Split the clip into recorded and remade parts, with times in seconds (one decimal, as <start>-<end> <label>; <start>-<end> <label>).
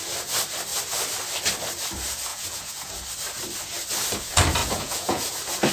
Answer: 0.0-2.3 recorded; 2.3-2.9 remade; 2.9-4.6 recorded; 4.6-5.3 remade; 5.3-5.7 recorded